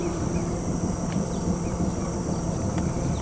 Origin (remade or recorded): recorded